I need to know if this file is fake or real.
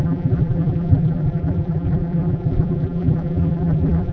fake